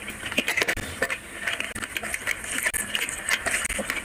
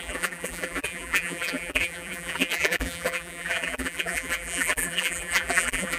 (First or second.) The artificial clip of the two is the second